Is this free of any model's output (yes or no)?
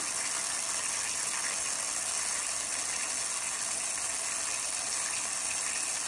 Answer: yes